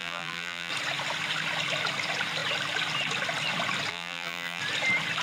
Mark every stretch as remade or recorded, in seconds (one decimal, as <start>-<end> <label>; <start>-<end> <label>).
0.0-0.7 remade; 0.7-3.9 recorded; 3.9-4.6 remade; 4.6-5.2 recorded